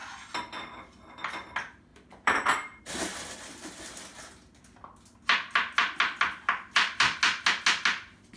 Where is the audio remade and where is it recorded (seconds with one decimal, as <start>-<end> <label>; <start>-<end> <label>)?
0.0-1.9 recorded; 1.9-2.8 remade; 2.8-8.4 recorded